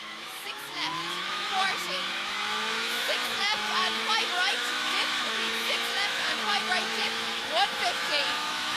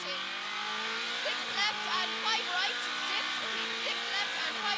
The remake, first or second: first